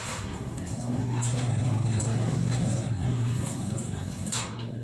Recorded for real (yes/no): no